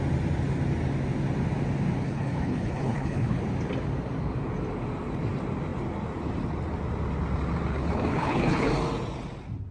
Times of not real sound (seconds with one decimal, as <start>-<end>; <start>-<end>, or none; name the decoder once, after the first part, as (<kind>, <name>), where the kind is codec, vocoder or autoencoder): 2.0-3.4 (codec, HILCodec); 7.7-8.7